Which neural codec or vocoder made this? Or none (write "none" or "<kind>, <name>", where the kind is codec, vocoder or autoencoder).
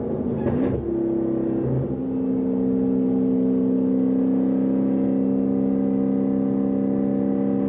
none